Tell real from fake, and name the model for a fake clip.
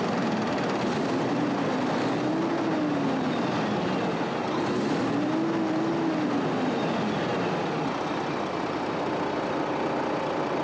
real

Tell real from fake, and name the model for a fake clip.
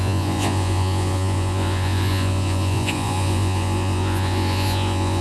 fake, vocoder, Vocos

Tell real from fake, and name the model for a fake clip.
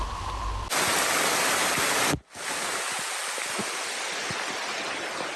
real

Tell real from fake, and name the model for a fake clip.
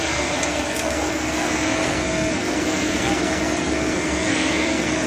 fake, codec, SNAC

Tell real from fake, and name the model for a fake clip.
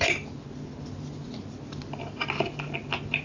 real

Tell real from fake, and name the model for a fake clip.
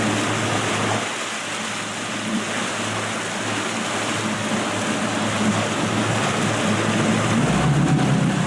real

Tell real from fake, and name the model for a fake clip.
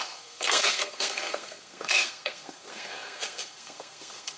fake, codec, SNAC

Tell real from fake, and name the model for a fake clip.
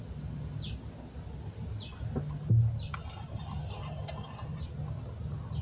real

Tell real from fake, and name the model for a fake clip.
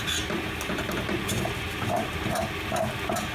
real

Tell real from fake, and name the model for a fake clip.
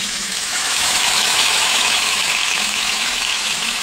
fake, autoencoder, DAC-VAE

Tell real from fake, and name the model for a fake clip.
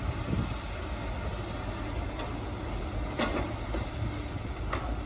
real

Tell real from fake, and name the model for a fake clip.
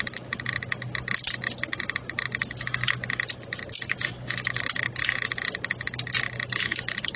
real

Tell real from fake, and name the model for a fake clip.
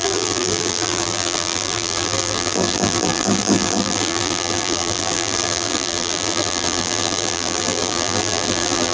fake, vocoder, BigVGAN v2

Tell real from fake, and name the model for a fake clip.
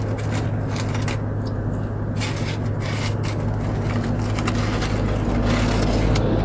real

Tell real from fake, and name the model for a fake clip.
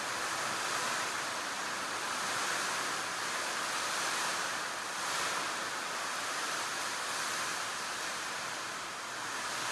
real